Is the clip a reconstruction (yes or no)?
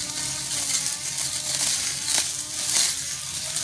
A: no